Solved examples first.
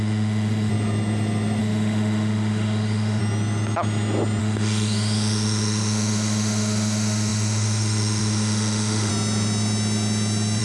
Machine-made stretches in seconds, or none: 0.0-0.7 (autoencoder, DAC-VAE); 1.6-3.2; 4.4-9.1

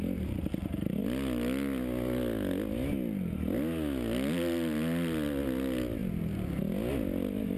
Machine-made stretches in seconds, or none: none

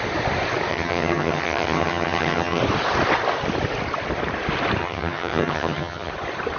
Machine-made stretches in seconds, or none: 0.7-2.6 (vocoder, HiFi-GAN); 4.8-6.1

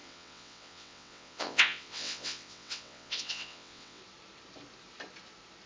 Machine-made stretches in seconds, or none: 0.0-4.0 (vocoder, WaveNeXt)

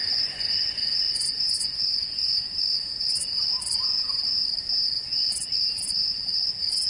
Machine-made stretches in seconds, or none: 0.0-3.5 (vocoder, Vocos)

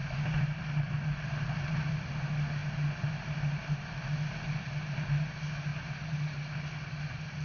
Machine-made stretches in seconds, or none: none

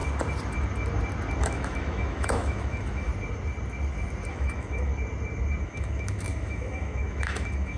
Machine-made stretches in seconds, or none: 1.4-3.1 (autoencoder, DAC-VAE); 4.3-4.9; 5.6-7.8